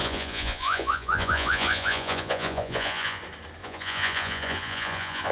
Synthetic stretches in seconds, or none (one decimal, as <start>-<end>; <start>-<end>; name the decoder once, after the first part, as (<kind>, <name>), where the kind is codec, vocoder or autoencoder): 0.0-3.2 (vocoder, Vocos); 3.6-5.3